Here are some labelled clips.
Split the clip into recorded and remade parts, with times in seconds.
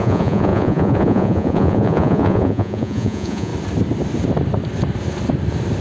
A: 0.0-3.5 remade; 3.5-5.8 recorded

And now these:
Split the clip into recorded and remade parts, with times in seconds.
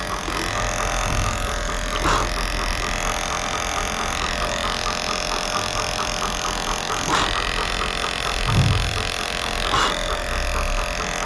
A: 0.0-11.3 recorded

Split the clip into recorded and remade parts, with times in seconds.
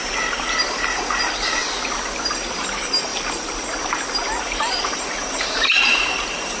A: 0.0-1.6 remade; 1.6-2.6 recorded; 2.6-3.1 remade; 3.1-4.4 recorded; 4.4-6.6 remade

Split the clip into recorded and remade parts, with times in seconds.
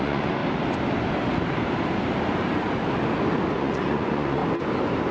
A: 0.0-0.4 remade; 0.4-3.5 recorded; 3.5-4.4 remade; 4.4-5.1 recorded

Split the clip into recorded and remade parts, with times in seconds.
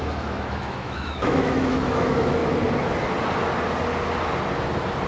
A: 0.0-2.4 remade; 2.4-5.1 recorded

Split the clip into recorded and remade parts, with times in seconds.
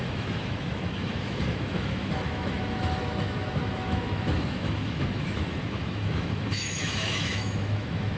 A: 0.0-8.2 remade